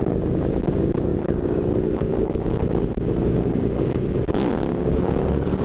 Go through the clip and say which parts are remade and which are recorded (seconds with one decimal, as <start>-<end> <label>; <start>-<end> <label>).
0.0-5.6 remade